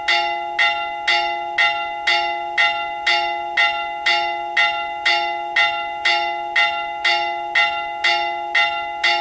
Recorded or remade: recorded